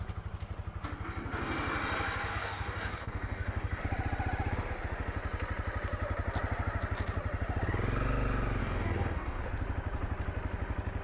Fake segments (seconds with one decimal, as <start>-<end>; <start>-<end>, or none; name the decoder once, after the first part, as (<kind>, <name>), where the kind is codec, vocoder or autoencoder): 2.3-3.8 (codec, DAC); 8.6-9.4